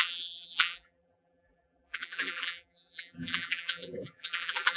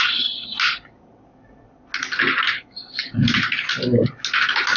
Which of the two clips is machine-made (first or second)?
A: first